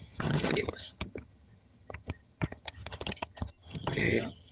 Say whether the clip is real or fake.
fake